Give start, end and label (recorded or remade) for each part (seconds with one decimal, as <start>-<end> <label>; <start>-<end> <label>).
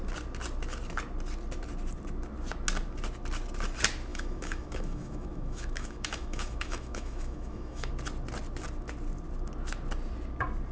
0.0-4.1 recorded; 4.1-7.9 remade; 7.9-10.7 recorded